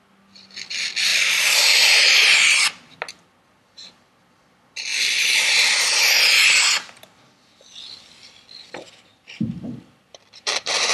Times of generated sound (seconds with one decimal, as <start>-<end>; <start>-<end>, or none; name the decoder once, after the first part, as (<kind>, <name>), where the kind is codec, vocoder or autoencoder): 1.1-2.7 (vocoder, BigVGAN v2); 9.1-10.9